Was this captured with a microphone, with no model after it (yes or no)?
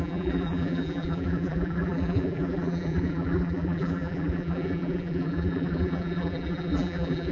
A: no